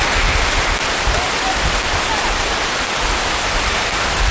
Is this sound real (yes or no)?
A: yes